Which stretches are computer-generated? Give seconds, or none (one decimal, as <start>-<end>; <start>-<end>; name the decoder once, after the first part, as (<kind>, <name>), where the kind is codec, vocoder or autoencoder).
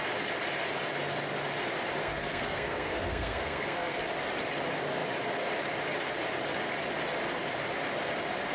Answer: 2.0-4.0 (codec, SNAC)